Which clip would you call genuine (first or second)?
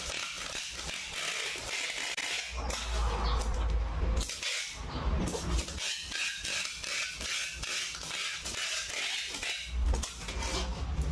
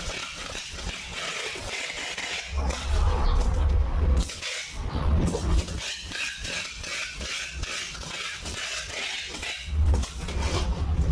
first